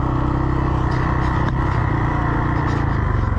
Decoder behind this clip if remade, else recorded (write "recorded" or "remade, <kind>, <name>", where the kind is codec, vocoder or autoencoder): recorded